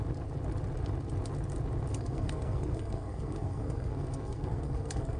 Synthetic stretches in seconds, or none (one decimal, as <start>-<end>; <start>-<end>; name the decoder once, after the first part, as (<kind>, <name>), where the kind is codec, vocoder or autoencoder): 1.9-5.2 (codec, SNAC)